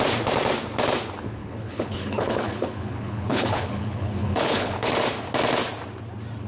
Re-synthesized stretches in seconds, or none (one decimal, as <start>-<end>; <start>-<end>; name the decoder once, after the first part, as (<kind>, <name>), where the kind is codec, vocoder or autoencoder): 1.4-5.0 (codec, HILCodec)